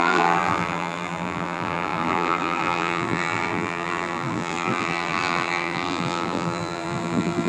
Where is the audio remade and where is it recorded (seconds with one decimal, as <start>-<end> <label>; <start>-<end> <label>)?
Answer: 0.0-7.5 remade